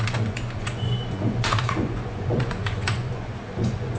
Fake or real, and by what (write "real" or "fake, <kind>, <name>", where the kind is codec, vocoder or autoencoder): fake, vocoder, Vocos